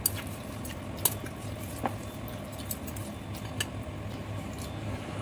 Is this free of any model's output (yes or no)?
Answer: yes